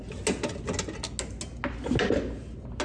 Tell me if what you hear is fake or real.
real